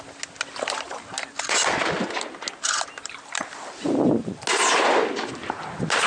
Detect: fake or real real